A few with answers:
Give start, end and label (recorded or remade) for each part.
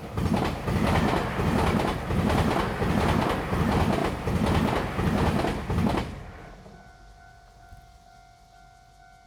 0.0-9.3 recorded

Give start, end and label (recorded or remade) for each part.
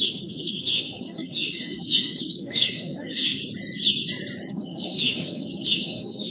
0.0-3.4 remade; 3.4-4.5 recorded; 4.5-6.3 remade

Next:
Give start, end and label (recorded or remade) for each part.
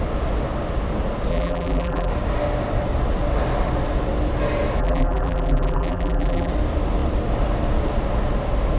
0.0-1.3 recorded; 1.3-2.1 remade; 2.1-4.8 recorded; 4.8-6.5 remade; 6.5-8.8 recorded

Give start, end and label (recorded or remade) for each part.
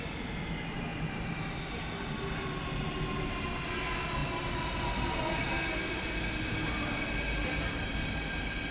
0.0-0.9 recorded; 0.9-2.2 remade; 2.2-8.7 recorded